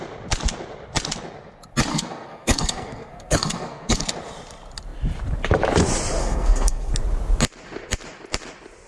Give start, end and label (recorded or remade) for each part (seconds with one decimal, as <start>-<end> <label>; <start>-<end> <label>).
0.0-1.9 recorded; 1.9-4.0 remade; 4.0-6.2 recorded; 6.2-6.9 remade; 6.9-8.9 recorded